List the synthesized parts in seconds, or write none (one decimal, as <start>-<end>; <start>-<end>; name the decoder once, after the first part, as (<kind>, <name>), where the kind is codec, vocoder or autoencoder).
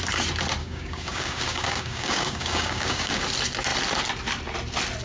0.6-3.2 (codec, DAC)